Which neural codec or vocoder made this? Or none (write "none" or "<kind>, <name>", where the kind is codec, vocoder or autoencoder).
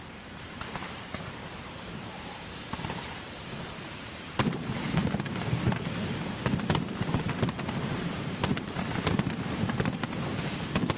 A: vocoder, BigVGAN v2